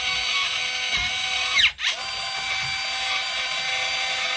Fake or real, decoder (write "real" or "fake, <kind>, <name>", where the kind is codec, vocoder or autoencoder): real